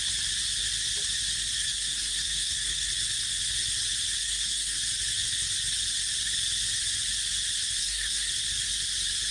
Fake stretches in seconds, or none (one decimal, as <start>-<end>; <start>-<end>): 1.6-2.9; 4.2-4.8; 7.8-8.3